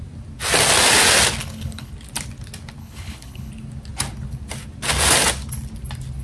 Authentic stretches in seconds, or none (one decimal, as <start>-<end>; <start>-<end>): 0.0-1.4; 1.9-2.8; 3.5-6.2